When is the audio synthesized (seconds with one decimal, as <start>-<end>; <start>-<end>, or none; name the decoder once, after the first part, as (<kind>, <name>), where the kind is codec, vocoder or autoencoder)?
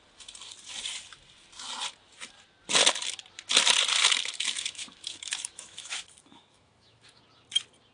4.0-7.2 (autoencoder, DAC-VAE)